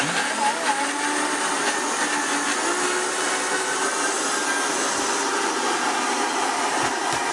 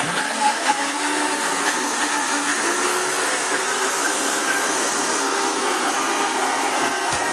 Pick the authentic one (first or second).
first